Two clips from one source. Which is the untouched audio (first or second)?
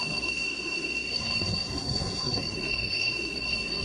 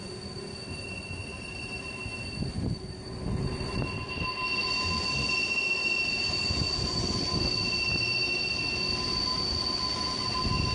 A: second